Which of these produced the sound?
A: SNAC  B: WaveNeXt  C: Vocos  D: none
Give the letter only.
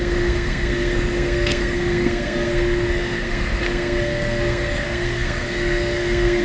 A